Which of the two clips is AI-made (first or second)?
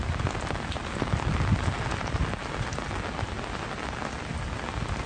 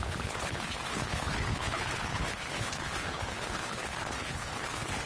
second